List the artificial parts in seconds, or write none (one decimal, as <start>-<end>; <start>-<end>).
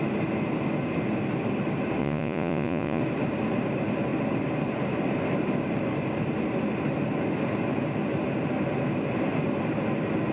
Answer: 2.0-3.0